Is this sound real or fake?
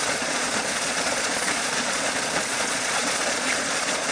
fake